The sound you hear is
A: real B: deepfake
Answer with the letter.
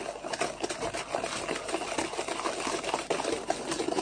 A